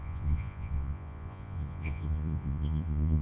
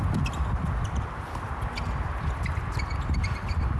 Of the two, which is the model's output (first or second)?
first